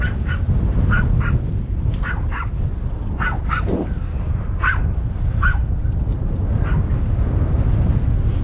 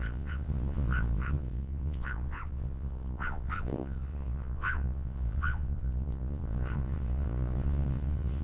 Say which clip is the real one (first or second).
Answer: first